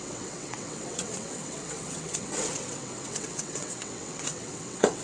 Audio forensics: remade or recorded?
remade